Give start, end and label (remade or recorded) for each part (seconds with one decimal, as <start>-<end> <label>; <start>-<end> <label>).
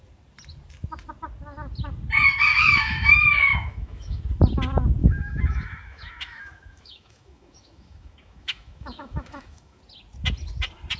0.0-2.5 recorded; 2.5-3.1 remade; 3.1-3.5 recorded; 3.5-4.2 remade; 4.2-5.0 recorded; 5.0-9.8 remade; 9.8-11.0 recorded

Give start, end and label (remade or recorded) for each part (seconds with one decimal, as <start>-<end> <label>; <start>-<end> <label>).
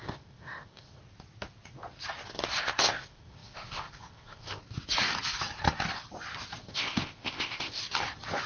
0.0-1.0 remade; 1.0-2.6 recorded; 2.6-4.6 remade; 4.6-6.6 recorded; 6.6-7.8 remade; 7.8-8.5 recorded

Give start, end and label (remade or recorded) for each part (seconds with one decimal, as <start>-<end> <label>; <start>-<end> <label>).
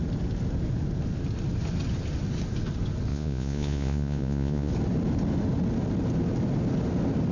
0.0-3.1 recorded; 3.1-4.7 remade; 4.7-7.3 recorded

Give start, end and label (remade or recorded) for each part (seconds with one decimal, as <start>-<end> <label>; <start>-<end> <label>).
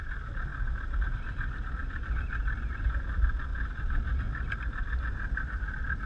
0.0-1.8 recorded; 1.8-2.3 remade; 2.3-3.5 recorded; 3.5-4.2 remade; 4.2-6.1 recorded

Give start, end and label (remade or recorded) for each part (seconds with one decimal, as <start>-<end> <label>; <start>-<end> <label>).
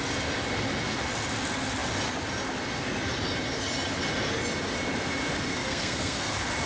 0.0-5.5 recorded; 5.5-6.3 remade; 6.3-6.7 recorded